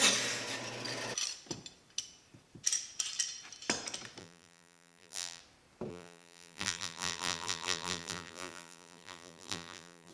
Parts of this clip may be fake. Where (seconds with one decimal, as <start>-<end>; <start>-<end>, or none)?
4.2-5.4; 5.9-10.1